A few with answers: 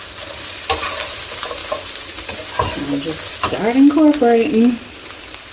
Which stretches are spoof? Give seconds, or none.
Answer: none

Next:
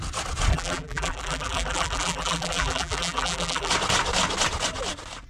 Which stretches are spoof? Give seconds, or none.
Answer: 0.5-3.7 (vocoder, BigVGAN v2)